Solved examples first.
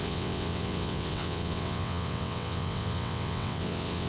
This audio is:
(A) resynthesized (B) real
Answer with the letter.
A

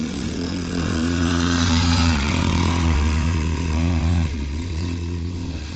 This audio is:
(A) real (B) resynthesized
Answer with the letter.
B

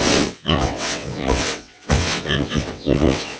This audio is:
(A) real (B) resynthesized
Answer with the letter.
B